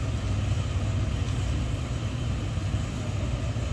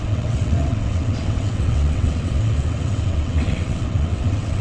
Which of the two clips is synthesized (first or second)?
second